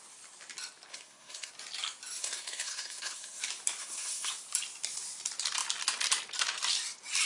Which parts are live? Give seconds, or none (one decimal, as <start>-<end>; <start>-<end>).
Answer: 0.0-0.9; 1.5-2.2; 3.4-3.8; 4.3-7.3